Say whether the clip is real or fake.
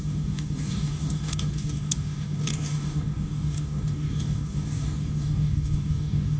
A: fake